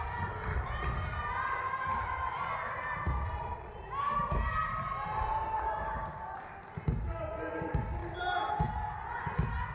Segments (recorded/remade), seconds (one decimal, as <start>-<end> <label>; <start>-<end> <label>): 0.0-3.2 recorded; 3.2-3.8 remade; 3.8-9.7 recorded